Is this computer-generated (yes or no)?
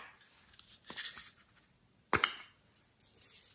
no